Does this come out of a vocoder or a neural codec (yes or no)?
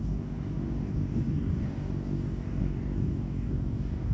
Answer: yes